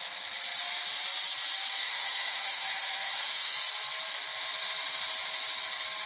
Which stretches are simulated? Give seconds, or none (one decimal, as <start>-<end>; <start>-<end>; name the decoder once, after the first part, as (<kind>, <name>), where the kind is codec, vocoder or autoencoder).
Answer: 1.8-3.6 (autoencoder, DAC-VAE)